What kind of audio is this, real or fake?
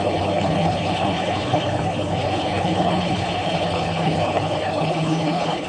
fake